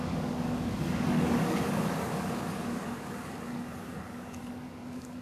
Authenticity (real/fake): fake